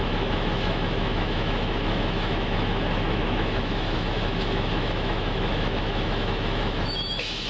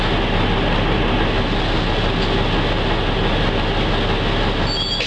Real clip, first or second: second